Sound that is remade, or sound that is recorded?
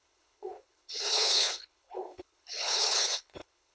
remade